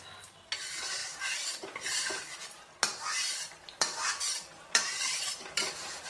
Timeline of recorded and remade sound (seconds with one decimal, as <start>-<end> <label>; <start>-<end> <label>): 0.0-1.0 recorded; 1.0-2.2 remade; 2.2-3.2 recorded; 3.2-6.1 remade